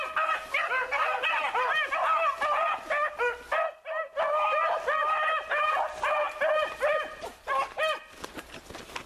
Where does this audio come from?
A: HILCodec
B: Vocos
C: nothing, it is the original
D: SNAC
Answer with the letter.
C